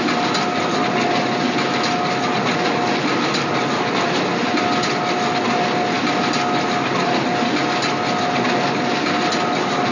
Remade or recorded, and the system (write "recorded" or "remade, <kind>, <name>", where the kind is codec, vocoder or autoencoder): recorded